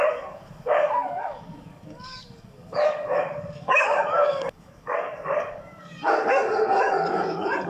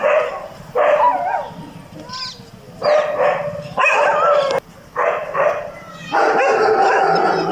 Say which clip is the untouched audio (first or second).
second